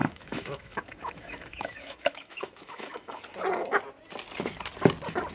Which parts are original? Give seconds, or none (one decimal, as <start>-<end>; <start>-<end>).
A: 3.2-5.3